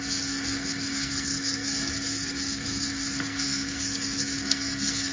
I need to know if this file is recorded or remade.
remade